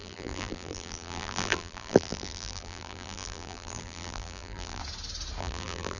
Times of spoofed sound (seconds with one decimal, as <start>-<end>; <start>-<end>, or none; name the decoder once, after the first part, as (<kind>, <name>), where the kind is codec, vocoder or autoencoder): 0.0-4.8 (vocoder, BigVGAN v2); 5.4-6.0